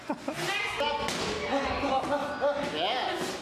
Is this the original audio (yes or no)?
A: yes